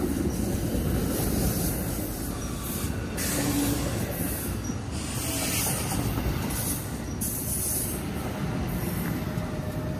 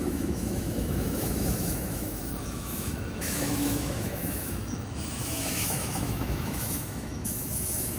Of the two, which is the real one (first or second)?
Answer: first